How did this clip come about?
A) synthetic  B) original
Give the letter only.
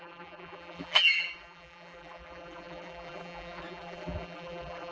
A